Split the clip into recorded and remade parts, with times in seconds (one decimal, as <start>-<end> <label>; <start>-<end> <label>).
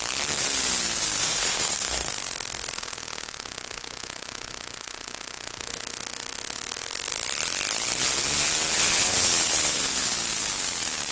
0.0-1.2 recorded; 1.2-2.1 remade; 2.1-11.1 recorded